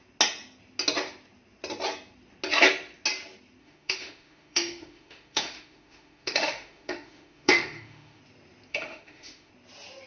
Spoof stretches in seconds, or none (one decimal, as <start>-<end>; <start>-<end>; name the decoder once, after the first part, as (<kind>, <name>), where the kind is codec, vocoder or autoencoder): 3.6-8.2 (autoencoder, DAC-VAE); 8.7-9.5